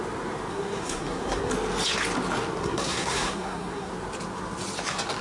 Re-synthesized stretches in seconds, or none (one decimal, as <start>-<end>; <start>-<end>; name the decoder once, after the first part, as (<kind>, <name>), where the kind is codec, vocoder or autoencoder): 0.5-1.5 (codec, SNAC); 2.6-3.9